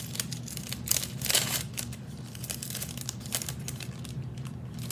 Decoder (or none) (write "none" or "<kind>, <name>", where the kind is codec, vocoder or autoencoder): none